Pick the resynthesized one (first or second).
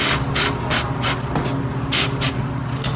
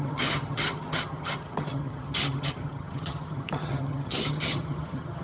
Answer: second